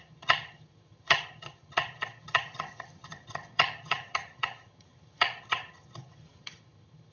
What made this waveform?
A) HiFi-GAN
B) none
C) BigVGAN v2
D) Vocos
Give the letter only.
A